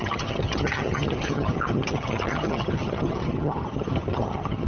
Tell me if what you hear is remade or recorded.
remade